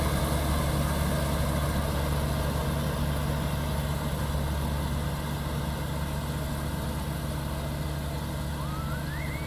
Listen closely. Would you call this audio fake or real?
real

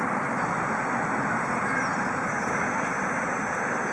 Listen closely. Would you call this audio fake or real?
real